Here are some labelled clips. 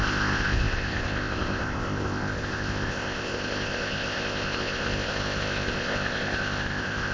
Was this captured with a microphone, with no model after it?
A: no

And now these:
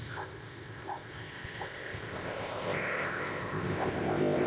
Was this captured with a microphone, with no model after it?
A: no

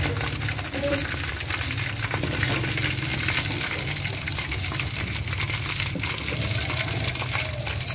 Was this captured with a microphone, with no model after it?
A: yes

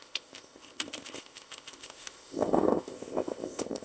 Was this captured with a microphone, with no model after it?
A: no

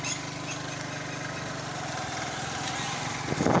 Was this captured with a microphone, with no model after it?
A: yes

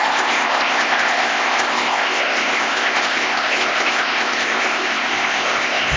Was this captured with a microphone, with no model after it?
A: no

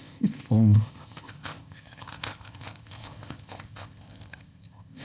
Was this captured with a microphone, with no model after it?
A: no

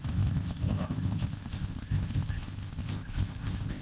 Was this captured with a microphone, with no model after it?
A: no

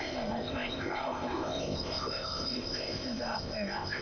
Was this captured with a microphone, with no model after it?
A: no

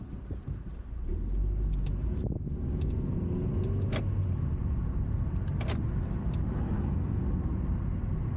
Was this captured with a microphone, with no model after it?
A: yes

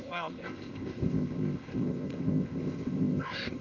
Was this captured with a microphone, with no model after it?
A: no